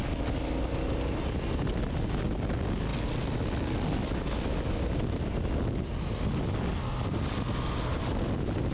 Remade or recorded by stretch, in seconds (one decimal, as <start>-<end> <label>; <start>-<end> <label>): 0.0-8.7 recorded